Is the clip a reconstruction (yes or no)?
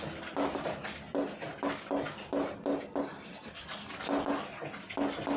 no